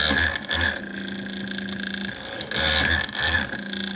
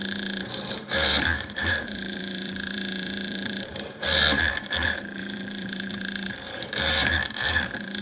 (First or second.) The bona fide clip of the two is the first